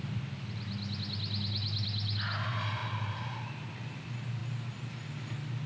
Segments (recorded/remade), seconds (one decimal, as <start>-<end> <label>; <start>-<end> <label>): 0.0-5.7 recorded